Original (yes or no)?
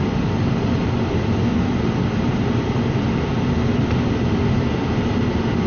yes